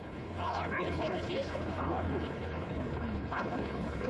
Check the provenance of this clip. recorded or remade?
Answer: remade